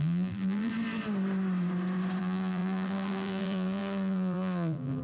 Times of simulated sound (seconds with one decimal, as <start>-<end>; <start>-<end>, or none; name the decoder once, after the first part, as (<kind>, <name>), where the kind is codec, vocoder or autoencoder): 0.0-0.7 (vocoder, BigVGAN v2); 2.2-5.0